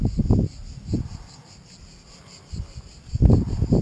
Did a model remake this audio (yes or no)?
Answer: no